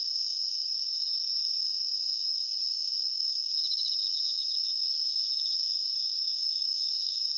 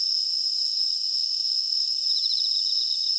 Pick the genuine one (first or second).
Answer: second